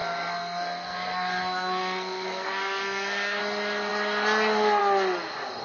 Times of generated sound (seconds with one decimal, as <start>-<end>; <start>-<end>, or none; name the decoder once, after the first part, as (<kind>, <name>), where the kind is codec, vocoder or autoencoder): 0.0-3.4 (codec, SNAC)

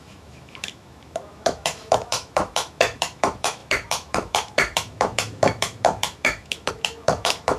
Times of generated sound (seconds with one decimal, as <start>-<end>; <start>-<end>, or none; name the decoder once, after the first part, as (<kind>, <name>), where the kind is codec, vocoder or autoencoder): 0.0-7.6 (autoencoder, DAC-VAE)

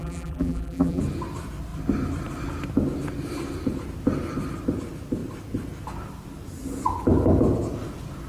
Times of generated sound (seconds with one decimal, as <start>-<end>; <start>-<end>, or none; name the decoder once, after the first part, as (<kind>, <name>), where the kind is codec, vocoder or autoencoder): 0.0-1.0 (vocoder, BigVGAN v2)

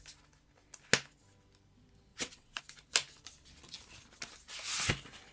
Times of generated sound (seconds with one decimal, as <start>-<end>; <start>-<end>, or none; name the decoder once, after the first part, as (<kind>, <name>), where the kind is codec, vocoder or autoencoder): 2.1-2.6 (vocoder, WaveNeXt)

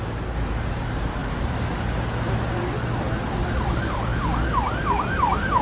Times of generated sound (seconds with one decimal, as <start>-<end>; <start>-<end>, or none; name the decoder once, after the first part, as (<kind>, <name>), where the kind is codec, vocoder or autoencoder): 3.4-4.2 (vocoder, BigVGAN v2)

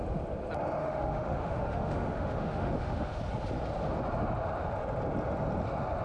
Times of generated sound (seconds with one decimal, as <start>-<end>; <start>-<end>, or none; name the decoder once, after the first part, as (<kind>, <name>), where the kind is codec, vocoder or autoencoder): 0.8-3.2 (autoencoder, DAC-VAE)

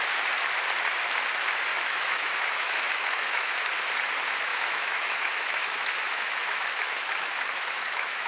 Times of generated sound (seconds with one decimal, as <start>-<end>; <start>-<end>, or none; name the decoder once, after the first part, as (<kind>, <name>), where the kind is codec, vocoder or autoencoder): 1.7-3.7 (autoencoder, DAC-VAE); 4.5-8.3

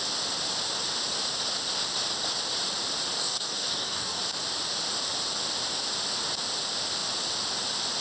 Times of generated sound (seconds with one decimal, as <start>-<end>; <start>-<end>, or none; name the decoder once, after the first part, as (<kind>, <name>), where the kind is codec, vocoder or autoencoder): 3.2-4.2 (codec, DAC)